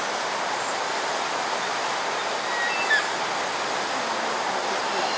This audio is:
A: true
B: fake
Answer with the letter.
A